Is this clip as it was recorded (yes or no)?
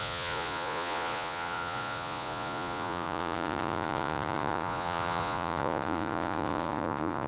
no